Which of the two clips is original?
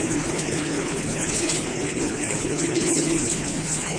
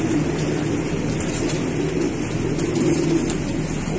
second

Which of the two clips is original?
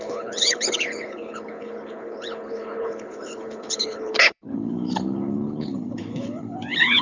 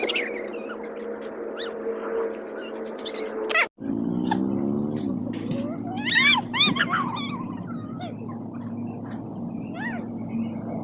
second